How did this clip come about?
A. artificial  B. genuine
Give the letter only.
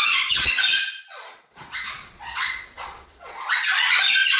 A